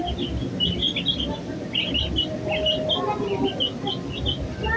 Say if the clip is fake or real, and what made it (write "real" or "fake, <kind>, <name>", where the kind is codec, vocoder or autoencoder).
real